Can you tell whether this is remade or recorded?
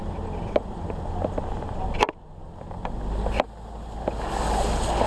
recorded